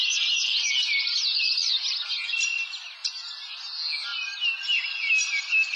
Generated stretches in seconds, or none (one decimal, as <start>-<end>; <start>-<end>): 0.0-0.7; 4.1-4.8